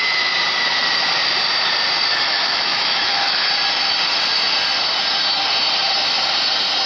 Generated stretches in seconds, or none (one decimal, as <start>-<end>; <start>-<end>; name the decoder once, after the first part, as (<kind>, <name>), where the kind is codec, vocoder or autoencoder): 2.1-3.5 (autoencoder, DAC-VAE)